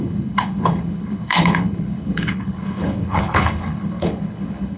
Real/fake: fake